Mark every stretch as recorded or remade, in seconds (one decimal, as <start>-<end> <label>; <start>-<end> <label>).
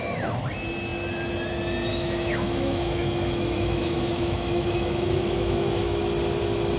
0.0-1.9 recorded; 1.9-6.0 remade; 6.0-6.8 recorded